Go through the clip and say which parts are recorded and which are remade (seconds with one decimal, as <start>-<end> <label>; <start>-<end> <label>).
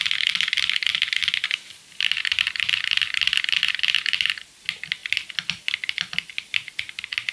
0.0-7.3 recorded